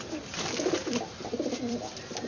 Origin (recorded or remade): remade